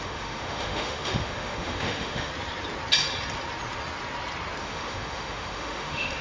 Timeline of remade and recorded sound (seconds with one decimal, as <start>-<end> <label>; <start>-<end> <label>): 0.0-2.3 remade; 2.3-4.6 recorded; 4.6-6.2 remade